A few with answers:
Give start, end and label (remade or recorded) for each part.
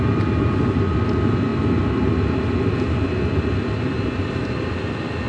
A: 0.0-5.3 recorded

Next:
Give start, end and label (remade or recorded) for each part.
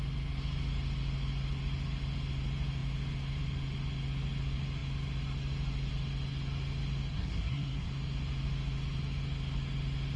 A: 0.0-7.1 recorded; 7.1-7.9 remade; 7.9-10.2 recorded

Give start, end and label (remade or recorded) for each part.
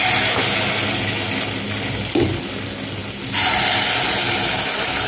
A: 0.0-5.1 recorded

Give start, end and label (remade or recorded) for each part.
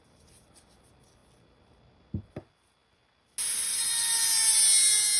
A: 0.0-5.2 recorded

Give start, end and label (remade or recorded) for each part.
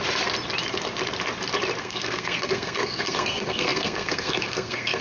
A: 0.0-1.8 recorded; 1.8-5.0 remade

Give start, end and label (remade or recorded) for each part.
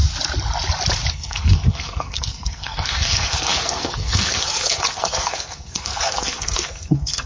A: 0.0-1.1 recorded; 1.1-7.3 remade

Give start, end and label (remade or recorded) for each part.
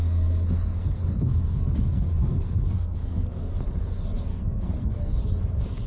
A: 0.0-3.5 remade; 3.5-4.3 recorded; 4.3-5.2 remade; 5.2-5.9 recorded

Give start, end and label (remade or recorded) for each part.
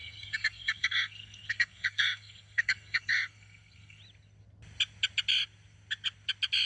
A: 0.0-4.0 remade; 4.0-6.7 recorded